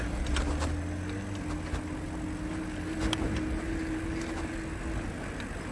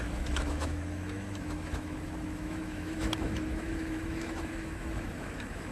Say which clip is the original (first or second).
first